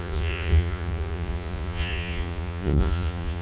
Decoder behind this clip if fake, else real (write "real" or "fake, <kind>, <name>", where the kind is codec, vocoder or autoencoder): fake, vocoder, Vocos